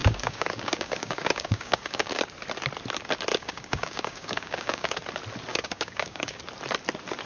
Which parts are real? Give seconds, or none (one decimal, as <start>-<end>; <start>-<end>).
2.2-3.3; 5.0-5.5; 6.4-7.2